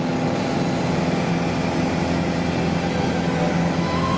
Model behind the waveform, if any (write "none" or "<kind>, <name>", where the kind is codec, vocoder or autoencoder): none